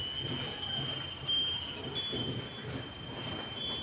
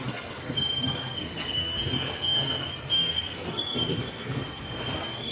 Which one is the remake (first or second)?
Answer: second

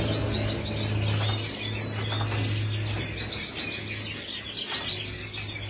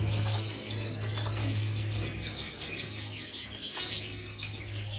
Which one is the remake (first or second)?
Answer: second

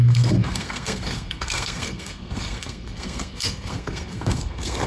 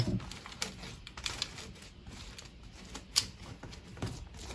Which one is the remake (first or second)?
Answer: first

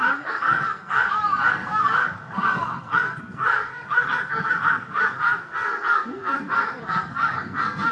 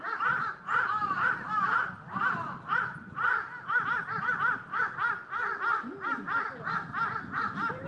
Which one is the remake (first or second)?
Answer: first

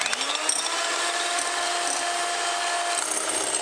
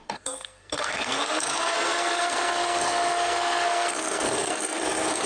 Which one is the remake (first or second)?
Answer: second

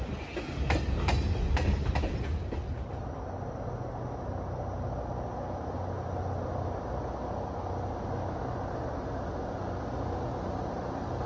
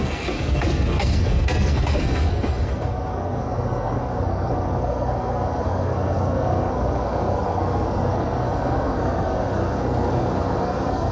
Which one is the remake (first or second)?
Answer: second